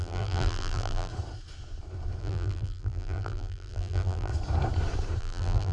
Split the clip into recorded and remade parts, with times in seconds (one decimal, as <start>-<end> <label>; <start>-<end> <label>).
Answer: 0.0-1.1 remade; 1.1-2.2 recorded; 2.2-4.3 remade; 4.3-5.2 recorded; 5.2-5.7 remade